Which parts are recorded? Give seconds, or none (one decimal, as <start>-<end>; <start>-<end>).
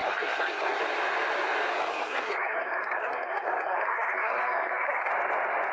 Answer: 0.8-1.9; 5.1-5.7